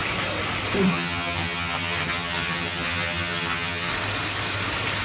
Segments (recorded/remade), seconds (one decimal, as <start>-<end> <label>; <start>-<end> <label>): 0.0-0.9 recorded; 0.9-3.9 remade; 3.9-5.0 recorded